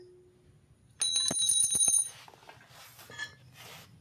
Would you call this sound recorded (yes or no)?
yes